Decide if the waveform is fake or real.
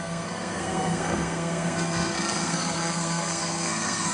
fake